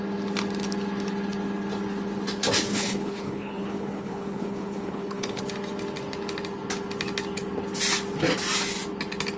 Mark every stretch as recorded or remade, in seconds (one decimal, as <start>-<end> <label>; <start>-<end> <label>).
0.0-2.7 recorded; 2.7-5.4 remade; 5.4-9.4 recorded